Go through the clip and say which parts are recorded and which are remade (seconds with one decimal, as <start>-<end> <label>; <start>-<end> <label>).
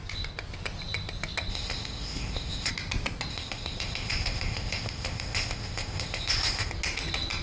0.0-1.5 recorded; 1.5-2.7 remade; 2.7-3.3 recorded; 3.3-6.7 remade; 6.7-7.4 recorded